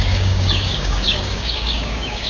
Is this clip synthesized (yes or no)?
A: yes